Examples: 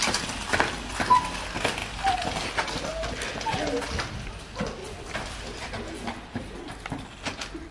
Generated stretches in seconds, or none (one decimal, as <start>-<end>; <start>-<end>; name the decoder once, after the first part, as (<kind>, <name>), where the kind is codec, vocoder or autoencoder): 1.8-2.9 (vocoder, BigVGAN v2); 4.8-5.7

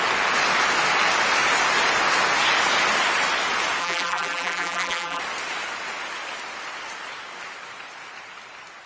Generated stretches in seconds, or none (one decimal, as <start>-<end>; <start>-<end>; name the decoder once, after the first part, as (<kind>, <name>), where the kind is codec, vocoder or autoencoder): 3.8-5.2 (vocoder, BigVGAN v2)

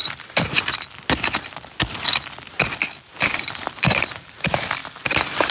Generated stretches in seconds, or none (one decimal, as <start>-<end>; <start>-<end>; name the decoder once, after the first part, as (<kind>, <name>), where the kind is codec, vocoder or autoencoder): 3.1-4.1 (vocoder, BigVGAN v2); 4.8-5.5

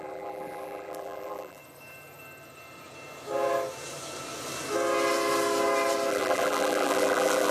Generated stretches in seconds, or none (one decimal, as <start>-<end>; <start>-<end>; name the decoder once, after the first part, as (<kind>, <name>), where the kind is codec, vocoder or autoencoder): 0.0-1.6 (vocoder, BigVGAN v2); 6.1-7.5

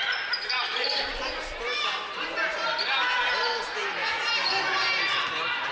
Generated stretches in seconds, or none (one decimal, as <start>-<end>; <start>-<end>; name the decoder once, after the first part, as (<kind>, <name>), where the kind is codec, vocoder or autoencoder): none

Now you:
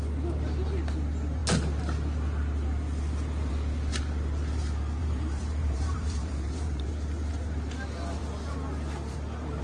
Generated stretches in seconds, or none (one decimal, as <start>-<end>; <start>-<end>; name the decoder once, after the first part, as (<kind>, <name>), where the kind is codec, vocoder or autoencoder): 5.0-6.9 (vocoder, BigVGAN v2)